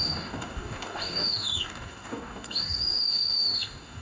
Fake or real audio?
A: fake